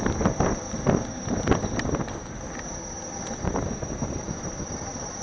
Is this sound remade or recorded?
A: recorded